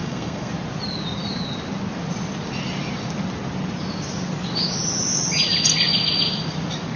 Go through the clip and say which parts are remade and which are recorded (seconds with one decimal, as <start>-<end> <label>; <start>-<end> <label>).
0.0-0.5 remade; 0.5-7.0 recorded